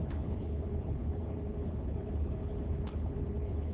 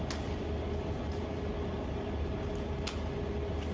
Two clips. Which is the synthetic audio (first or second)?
first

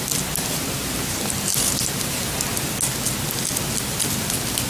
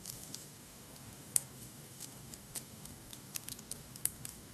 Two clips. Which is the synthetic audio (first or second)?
second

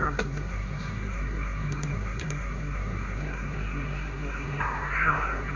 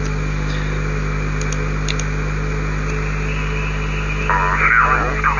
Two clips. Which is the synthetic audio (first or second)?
first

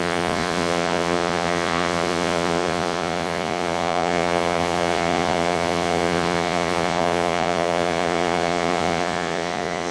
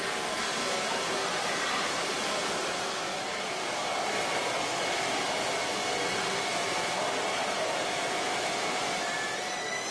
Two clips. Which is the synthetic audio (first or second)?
first